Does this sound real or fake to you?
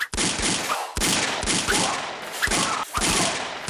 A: real